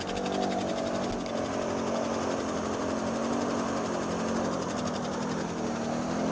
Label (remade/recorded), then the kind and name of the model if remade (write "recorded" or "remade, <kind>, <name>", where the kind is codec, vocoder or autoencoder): recorded